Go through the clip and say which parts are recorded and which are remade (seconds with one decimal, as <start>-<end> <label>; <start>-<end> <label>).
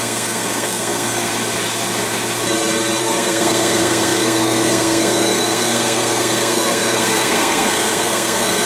0.0-1.3 remade; 1.3-3.0 recorded; 3.0-8.7 remade